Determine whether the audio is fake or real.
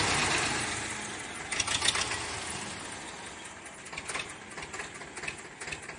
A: real